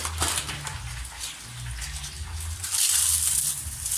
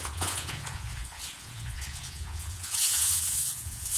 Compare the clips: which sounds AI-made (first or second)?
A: second